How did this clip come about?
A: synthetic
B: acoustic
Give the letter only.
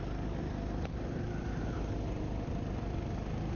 B